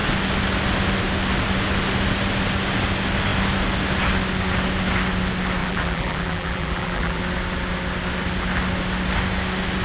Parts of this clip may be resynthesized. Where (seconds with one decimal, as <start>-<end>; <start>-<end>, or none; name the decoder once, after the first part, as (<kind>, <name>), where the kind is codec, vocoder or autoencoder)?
5.6-7.2 (vocoder, BigVGAN v2)